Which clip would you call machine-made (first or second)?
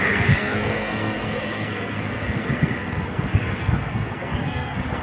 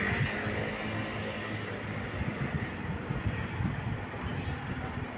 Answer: first